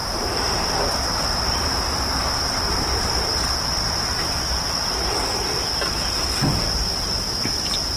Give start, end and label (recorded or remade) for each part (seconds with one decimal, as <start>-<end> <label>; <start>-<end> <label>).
0.0-8.0 recorded